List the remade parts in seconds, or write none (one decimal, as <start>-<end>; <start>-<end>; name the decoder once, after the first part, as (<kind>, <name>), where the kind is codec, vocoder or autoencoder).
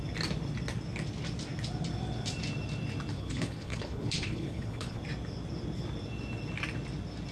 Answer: 3.1-5.0 (codec, HILCodec)